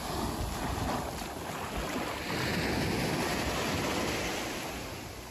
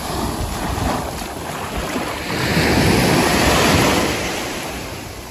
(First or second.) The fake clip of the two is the second